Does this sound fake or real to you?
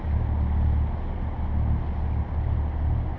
real